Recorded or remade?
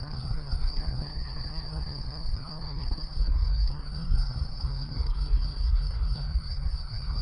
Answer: remade